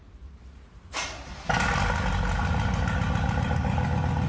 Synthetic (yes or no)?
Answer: no